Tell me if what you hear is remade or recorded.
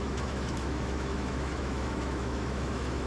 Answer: remade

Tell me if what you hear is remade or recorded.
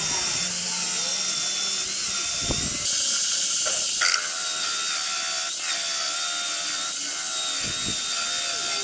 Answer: recorded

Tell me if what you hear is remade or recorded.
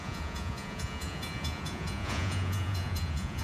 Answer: remade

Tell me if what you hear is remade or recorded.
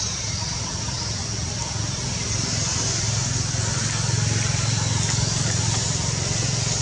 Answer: recorded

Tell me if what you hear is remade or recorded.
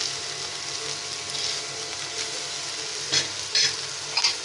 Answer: recorded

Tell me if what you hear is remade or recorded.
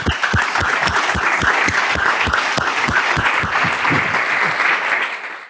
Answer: recorded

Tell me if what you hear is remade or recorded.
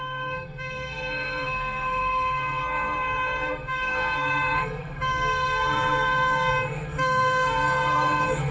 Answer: remade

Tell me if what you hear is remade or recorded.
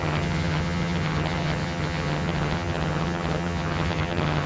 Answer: remade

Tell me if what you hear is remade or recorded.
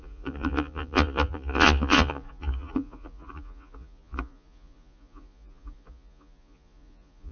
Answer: remade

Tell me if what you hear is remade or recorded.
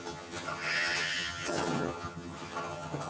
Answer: remade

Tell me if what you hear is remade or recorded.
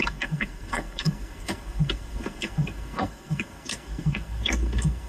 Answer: remade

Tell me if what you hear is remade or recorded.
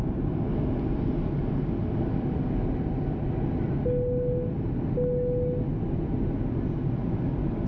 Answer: recorded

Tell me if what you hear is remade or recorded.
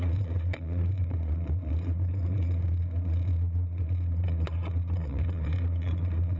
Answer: remade